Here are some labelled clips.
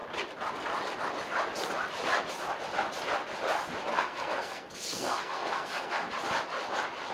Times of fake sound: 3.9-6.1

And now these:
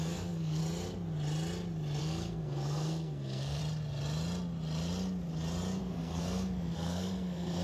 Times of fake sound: 0.0-0.6; 2.0-3.6; 5.8-7.6

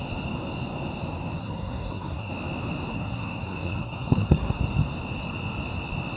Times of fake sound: 1.4-2.3; 2.9-4.6

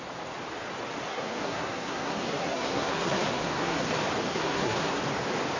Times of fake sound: 1.1-3.9; 4.3-5.0